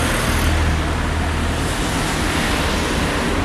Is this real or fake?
real